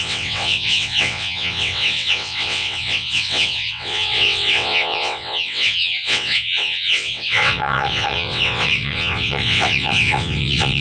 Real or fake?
fake